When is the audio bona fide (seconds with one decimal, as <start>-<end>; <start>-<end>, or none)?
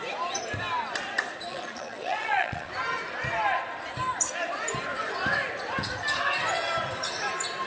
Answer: 0.0-1.5; 2.7-7.7